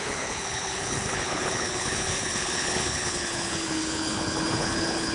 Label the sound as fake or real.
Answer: fake